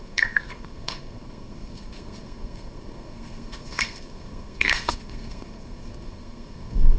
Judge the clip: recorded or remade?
remade